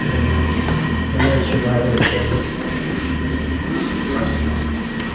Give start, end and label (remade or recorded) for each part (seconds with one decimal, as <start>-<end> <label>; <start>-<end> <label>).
0.0-5.1 recorded

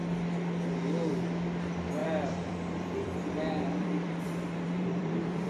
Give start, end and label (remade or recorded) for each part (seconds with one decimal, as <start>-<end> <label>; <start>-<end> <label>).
0.0-2.0 recorded; 2.0-5.5 remade

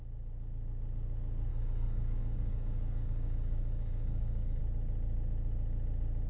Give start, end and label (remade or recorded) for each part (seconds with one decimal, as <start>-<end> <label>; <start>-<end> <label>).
0.0-1.5 recorded; 1.5-4.6 remade; 4.6-6.3 recorded

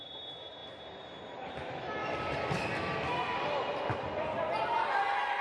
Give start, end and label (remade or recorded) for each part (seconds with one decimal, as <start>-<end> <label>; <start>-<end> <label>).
0.0-5.4 recorded

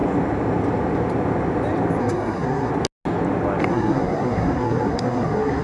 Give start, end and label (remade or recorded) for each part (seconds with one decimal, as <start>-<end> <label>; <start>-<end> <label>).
0.0-2.0 recorded; 2.0-2.7 remade; 2.7-3.6 recorded; 3.6-5.6 remade

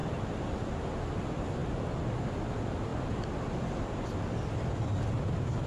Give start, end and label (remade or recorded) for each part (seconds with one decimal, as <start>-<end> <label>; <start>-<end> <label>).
0.0-5.7 recorded

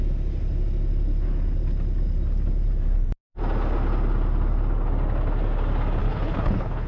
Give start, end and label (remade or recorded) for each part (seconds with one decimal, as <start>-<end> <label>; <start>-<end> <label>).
0.0-6.0 recorded; 6.0-6.9 remade

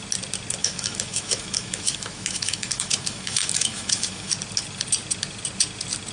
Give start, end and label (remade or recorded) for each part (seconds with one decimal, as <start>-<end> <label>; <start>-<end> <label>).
0.0-0.6 recorded; 0.6-4.3 remade; 4.3-6.1 recorded